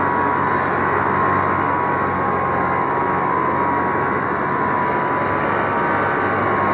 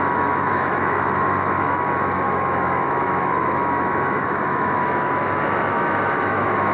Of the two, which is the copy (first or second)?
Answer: second